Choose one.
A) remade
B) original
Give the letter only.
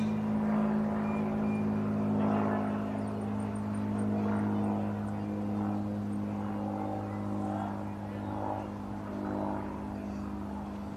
B